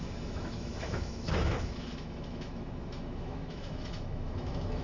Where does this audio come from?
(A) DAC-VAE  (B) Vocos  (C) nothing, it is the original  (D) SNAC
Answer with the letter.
A